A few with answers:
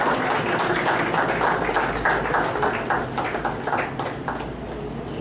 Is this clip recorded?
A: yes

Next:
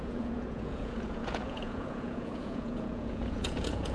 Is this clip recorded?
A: no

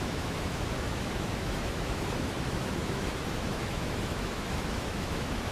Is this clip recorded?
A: no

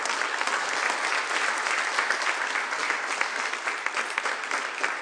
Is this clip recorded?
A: yes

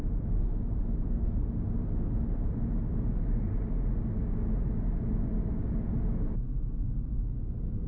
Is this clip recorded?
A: yes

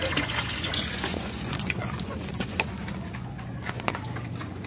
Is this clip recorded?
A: no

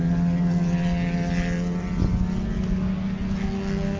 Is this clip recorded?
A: yes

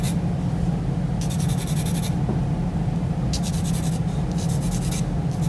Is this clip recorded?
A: yes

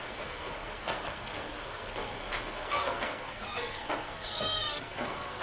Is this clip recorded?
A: no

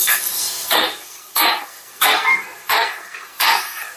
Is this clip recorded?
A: no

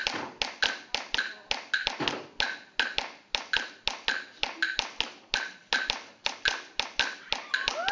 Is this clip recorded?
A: yes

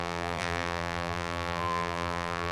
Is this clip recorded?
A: no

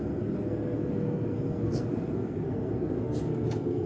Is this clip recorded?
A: no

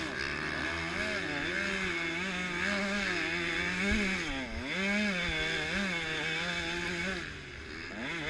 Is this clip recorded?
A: yes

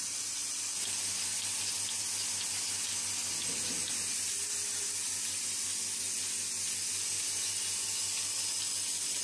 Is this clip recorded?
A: yes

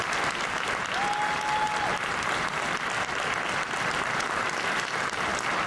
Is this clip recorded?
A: yes